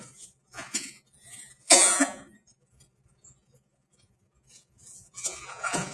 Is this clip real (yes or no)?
no